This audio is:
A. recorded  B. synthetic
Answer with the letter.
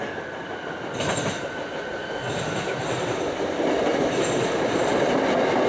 A